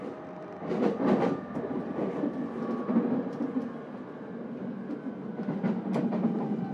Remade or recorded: recorded